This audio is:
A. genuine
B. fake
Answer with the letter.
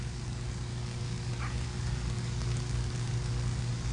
B